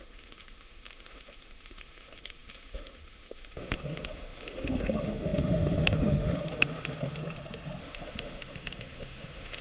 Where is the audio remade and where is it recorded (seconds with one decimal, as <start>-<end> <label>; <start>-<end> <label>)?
0.0-7.2 remade; 7.2-7.8 recorded; 7.8-9.6 remade

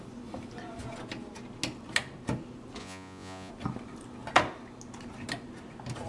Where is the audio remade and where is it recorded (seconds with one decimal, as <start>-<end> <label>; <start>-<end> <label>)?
0.0-2.8 recorded; 2.8-3.5 remade; 3.5-6.1 recorded

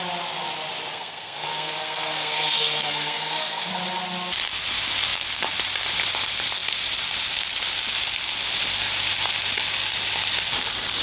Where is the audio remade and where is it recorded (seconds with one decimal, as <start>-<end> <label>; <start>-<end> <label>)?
0.0-0.9 recorded; 0.9-3.7 remade; 3.7-11.0 recorded